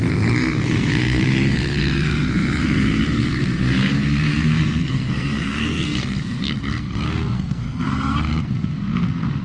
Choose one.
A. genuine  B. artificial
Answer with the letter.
B